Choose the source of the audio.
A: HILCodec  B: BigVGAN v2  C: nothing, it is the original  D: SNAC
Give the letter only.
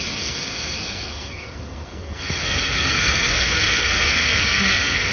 D